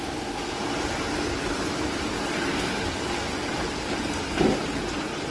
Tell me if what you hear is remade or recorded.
recorded